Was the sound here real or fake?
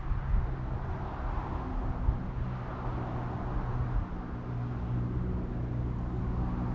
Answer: real